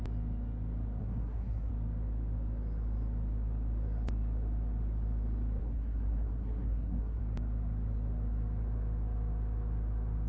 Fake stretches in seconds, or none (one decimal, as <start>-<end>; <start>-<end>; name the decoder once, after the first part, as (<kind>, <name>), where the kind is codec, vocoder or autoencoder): 1.0-1.7 (codec, SNAC); 5.6-7.2